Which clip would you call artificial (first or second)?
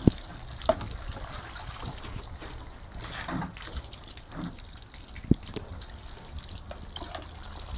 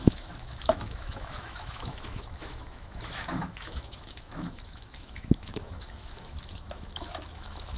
second